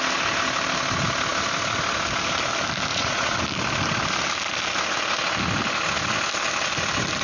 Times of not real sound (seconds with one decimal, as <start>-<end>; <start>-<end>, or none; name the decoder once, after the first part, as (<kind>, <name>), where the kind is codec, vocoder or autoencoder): 2.9-3.4 (vocoder, Vocos)